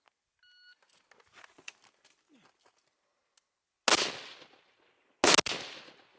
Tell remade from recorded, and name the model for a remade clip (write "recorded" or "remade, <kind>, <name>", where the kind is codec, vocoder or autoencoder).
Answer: recorded